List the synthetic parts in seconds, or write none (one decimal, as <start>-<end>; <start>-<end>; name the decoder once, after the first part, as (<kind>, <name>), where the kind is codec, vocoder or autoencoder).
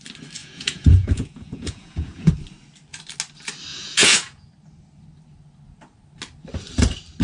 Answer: 0.4-2.3 (vocoder, Vocos); 3.7-4.5